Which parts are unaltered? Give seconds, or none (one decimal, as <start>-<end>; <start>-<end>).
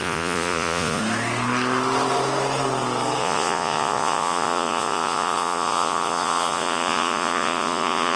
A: 1.0-3.2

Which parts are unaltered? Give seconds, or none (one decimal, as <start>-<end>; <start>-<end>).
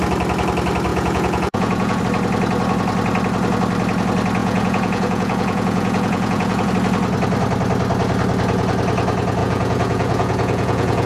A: 0.0-0.9; 2.0-4.4; 6.7-9.4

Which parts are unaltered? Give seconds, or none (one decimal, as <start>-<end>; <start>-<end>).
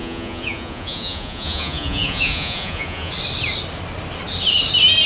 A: 3.1-5.1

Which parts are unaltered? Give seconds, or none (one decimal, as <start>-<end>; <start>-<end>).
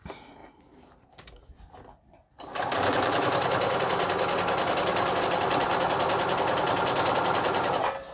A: 0.0-8.1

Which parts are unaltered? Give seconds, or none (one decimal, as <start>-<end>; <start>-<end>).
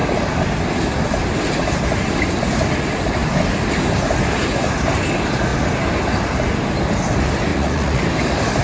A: 0.0-7.5; 8.0-8.6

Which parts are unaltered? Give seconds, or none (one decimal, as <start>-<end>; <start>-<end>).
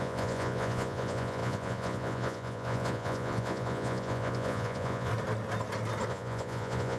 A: 5.1-6.1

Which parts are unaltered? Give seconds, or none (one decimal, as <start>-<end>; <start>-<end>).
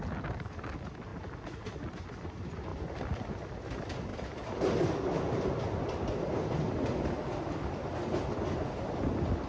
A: 0.0-9.5